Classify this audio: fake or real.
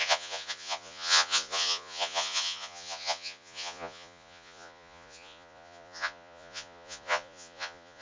fake